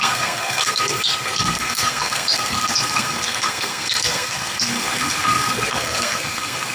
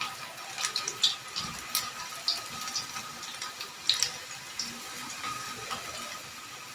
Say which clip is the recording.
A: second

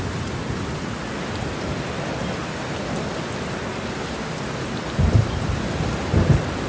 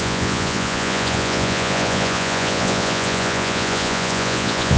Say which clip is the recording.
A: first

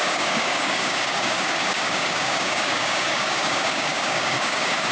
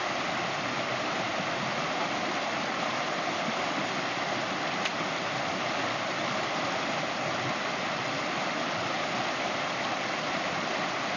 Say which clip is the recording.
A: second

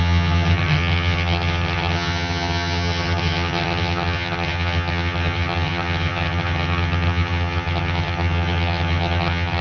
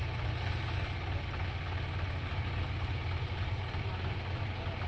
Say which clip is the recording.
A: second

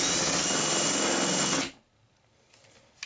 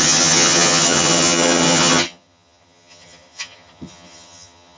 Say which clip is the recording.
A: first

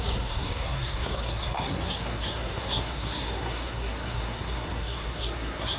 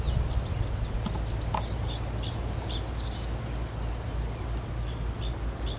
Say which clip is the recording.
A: second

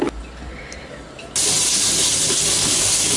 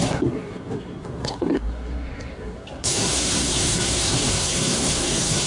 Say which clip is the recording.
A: first